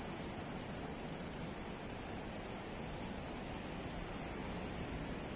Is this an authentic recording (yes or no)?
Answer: yes